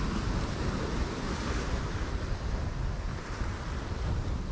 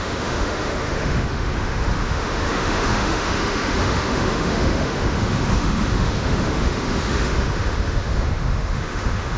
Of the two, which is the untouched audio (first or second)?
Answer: first